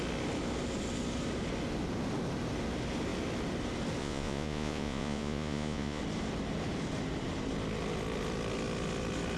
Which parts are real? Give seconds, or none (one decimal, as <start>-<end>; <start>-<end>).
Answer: 0.0-4.0; 6.0-9.4